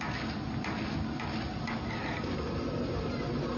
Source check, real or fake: real